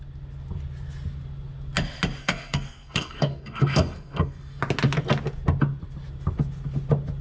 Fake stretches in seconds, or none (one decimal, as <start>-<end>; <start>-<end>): 2.2-4.6